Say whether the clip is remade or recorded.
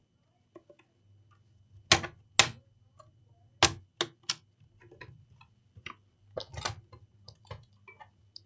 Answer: recorded